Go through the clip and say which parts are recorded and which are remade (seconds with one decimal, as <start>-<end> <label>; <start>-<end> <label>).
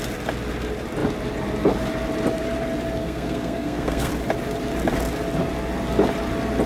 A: 0.0-3.0 recorded; 3.0-4.1 remade; 4.1-6.7 recorded